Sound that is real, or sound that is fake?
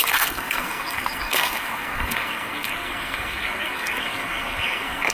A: fake